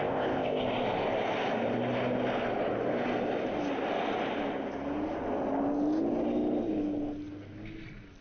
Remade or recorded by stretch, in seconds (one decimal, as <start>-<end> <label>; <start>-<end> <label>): 0.0-0.6 remade; 0.6-8.2 recorded